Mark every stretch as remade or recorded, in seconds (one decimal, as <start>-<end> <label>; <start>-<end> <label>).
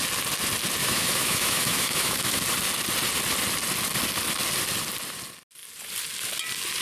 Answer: 0.0-0.8 recorded; 0.8-2.4 remade; 2.4-6.8 recorded